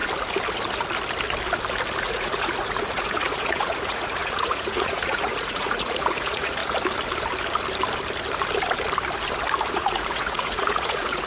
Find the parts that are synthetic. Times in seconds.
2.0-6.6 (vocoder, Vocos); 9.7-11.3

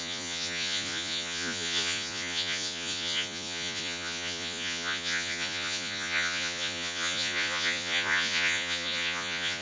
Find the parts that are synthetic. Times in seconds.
0.0-9.6 (vocoder, Vocos)

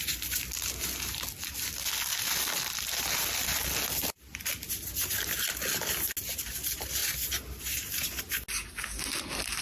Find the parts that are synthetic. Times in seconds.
none

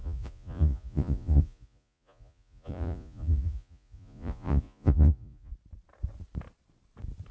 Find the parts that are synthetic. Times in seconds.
0.0-5.5 (vocoder, Vocos)

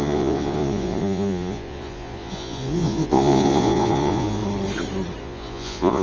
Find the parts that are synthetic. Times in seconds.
0.0-4.4 (vocoder, Vocos); 5.2-6.0